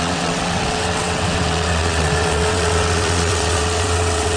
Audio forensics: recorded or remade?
remade